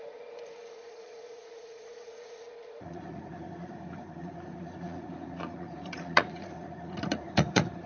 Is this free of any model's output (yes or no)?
no